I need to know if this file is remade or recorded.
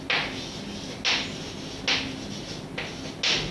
recorded